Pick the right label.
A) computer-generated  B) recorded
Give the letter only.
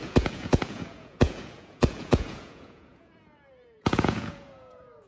A